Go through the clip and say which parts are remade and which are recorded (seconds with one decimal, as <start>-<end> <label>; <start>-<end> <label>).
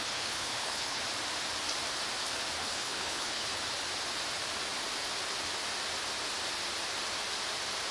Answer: 0.0-1.0 remade; 1.0-2.6 recorded; 2.6-3.6 remade; 3.6-7.9 recorded